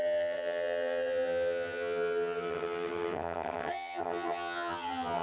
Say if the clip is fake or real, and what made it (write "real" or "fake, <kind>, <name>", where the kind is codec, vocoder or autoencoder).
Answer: fake, vocoder, HiFi-GAN